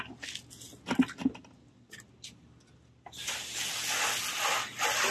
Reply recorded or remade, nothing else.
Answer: recorded